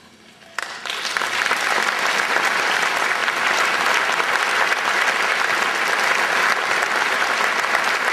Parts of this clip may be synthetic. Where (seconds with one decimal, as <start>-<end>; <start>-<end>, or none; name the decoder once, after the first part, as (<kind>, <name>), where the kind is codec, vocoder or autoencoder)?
none